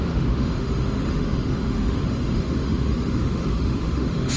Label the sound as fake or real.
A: fake